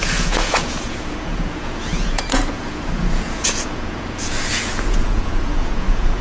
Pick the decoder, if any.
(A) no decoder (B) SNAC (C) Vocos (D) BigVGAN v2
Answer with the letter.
C